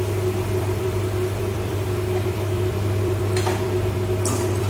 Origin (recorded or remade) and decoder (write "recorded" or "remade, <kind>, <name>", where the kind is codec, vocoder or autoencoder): remade, vocoder, BigVGAN v2